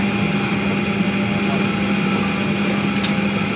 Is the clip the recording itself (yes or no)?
yes